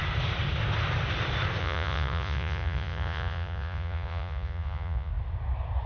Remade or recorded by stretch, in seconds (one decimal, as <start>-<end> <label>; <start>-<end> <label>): 0.0-1.6 recorded; 1.6-5.1 remade; 5.1-5.9 recorded